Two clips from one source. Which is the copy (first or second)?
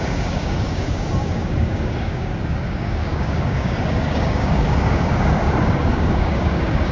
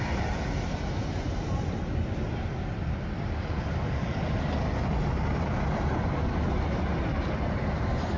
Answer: first